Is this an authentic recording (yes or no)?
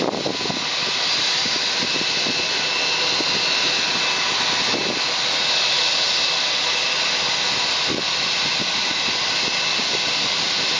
yes